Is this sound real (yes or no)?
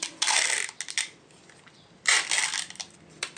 yes